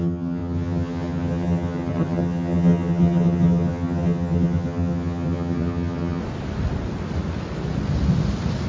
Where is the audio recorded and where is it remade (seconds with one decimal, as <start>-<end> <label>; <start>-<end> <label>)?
0.0-6.2 remade; 6.2-8.7 recorded